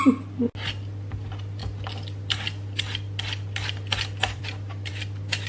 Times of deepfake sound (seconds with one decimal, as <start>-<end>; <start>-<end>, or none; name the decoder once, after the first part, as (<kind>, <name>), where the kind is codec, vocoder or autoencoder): 1.6-4.9 (vocoder, BigVGAN v2)